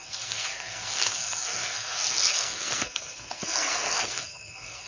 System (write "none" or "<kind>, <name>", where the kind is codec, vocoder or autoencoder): codec, SNAC